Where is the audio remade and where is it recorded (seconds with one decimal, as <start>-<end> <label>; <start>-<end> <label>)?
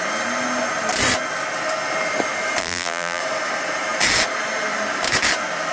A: 0.0-2.6 recorded; 2.6-3.2 remade; 3.2-5.7 recorded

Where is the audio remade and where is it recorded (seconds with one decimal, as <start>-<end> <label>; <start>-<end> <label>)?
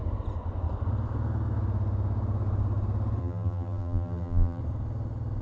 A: 0.0-3.2 recorded; 3.2-4.6 remade; 4.6-5.4 recorded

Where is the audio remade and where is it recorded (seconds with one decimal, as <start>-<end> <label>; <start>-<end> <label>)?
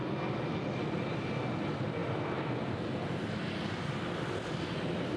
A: 0.0-5.2 recorded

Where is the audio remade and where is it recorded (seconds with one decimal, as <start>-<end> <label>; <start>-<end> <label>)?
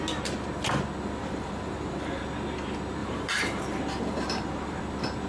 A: 0.0-1.2 recorded; 1.2-2.2 remade; 2.2-3.0 recorded; 3.0-4.8 remade; 4.8-5.3 recorded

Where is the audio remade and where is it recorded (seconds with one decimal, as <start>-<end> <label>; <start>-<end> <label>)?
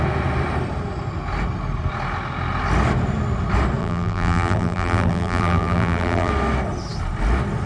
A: 0.0-3.8 recorded; 3.8-6.3 remade; 6.3-7.7 recorded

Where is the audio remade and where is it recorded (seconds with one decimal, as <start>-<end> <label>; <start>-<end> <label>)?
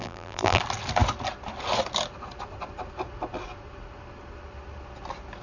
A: 0.0-0.6 remade; 0.6-5.4 recorded